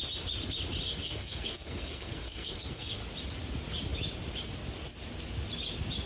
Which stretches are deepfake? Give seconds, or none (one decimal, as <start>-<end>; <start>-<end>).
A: 1.0-3.0